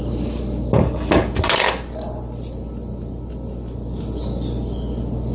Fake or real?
real